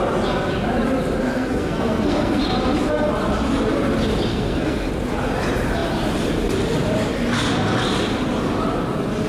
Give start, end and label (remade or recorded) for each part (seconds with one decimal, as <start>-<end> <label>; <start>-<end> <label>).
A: 0.0-1.2 recorded; 1.2-2.4 remade; 2.4-4.3 recorded; 4.3-4.9 remade; 4.9-9.3 recorded

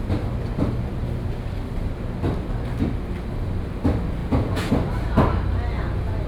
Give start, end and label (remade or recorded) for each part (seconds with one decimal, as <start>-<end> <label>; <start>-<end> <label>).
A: 0.0-4.2 recorded; 4.2-4.7 remade; 4.7-6.3 recorded

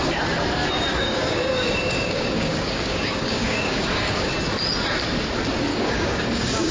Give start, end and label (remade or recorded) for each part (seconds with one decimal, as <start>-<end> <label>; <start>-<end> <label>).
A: 0.0-0.9 recorded; 0.9-4.3 remade; 4.3-5.7 recorded; 5.7-6.7 remade